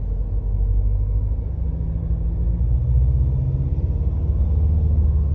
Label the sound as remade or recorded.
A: recorded